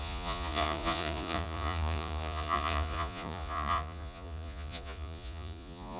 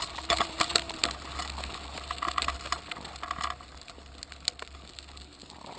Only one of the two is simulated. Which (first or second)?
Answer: first